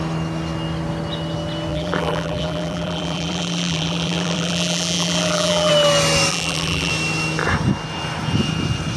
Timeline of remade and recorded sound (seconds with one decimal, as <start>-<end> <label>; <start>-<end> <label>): 0.0-1.7 recorded; 1.7-5.7 remade; 5.7-6.3 recorded; 6.3-6.9 remade; 6.9-9.0 recorded